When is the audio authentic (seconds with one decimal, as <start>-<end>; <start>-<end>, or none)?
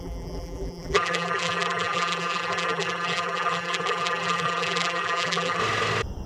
5.6-6.3